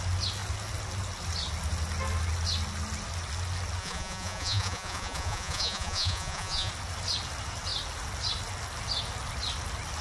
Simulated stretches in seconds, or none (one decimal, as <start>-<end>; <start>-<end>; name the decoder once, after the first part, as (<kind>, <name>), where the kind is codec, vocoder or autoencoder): 3.8-6.7 (vocoder, Vocos)